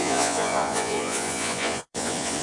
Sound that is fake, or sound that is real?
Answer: fake